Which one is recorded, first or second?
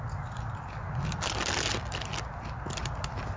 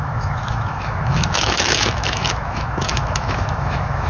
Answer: first